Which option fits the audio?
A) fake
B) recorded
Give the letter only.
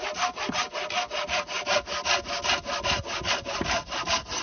B